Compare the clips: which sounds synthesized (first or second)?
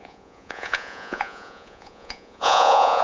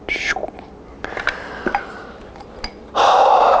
first